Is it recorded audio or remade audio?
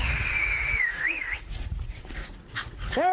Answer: remade